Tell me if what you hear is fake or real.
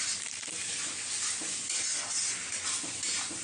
real